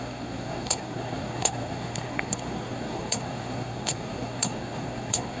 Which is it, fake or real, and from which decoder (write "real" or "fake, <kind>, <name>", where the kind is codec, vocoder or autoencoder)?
fake, codec, SNAC